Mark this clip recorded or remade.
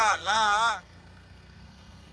remade